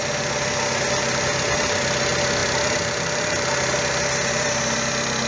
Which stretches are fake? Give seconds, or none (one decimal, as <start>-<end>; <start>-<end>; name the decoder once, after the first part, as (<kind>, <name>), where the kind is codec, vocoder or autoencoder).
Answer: none